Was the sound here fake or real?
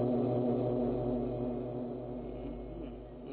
real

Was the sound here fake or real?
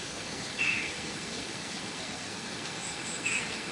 fake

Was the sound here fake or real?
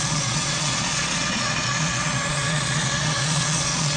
fake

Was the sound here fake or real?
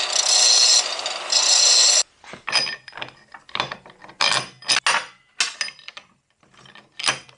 real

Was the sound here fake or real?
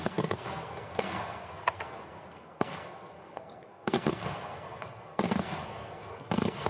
fake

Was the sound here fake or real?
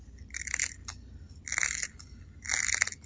real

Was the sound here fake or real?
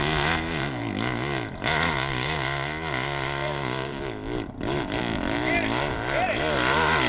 real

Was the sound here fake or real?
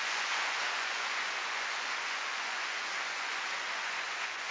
fake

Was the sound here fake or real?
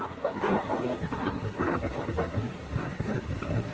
fake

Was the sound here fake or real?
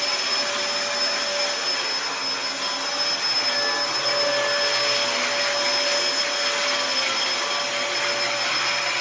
real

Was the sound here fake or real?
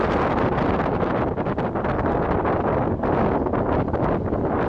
real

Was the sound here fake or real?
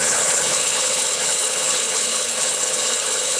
fake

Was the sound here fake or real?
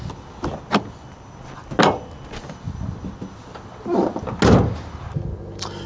real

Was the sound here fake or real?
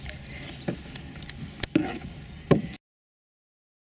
real